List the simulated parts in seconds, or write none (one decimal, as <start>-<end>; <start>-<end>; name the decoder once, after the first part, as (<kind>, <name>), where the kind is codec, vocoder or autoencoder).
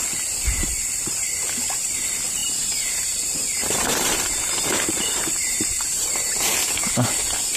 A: 2.4-6.5 (vocoder, BigVGAN v2)